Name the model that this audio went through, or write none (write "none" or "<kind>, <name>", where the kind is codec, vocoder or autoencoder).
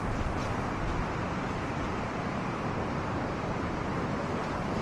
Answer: vocoder, BigVGAN v2